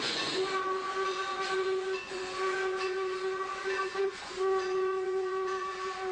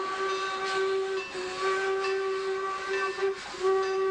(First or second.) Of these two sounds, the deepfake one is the first